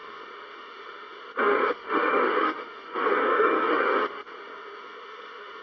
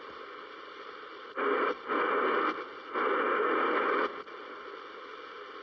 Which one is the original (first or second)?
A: second